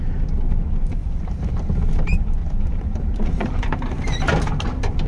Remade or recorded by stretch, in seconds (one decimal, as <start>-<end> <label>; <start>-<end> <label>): 0.0-1.0 recorded; 1.0-1.9 remade; 1.9-2.4 recorded; 2.4-3.8 remade; 3.8-5.1 recorded